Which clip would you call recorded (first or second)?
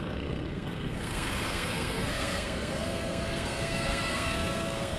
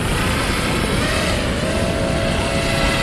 second